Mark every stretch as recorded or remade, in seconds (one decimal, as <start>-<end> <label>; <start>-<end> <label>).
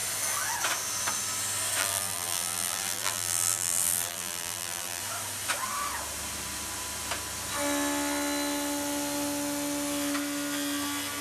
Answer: 0.0-1.8 recorded; 1.8-5.0 remade; 5.0-11.2 recorded